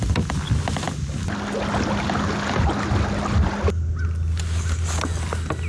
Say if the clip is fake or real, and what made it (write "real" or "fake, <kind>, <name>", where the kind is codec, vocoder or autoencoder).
real